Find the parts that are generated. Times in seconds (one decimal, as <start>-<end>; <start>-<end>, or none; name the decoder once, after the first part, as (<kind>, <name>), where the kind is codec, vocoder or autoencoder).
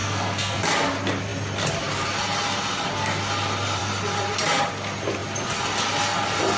0.0-0.6 (codec, SNAC)